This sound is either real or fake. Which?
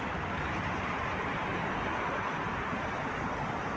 real